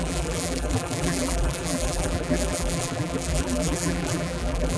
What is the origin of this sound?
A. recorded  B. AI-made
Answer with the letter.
B